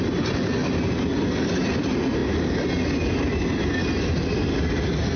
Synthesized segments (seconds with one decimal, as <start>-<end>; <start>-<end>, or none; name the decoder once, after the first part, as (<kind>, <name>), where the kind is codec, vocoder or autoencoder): none